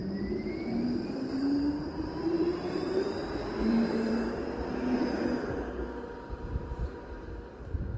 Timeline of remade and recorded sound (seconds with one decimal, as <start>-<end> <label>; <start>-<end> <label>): 0.0-4.4 remade; 4.4-8.0 recorded